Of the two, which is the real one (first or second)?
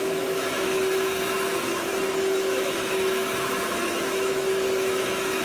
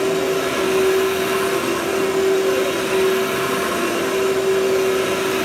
second